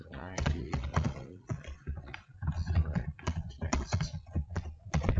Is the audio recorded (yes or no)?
no